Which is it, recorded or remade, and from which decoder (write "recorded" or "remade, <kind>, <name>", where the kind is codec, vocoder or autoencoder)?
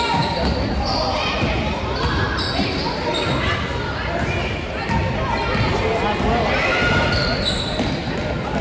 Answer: recorded